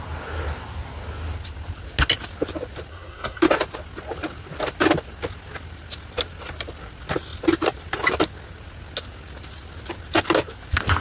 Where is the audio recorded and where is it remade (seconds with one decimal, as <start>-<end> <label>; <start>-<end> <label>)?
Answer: 0.0-2.9 recorded; 2.9-3.4 remade; 3.4-11.0 recorded